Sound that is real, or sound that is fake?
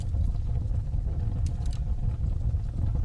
real